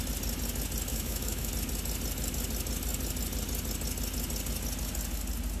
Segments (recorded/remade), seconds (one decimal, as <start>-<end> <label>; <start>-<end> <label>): 0.0-0.9 recorded; 0.9-1.5 remade; 1.5-5.6 recorded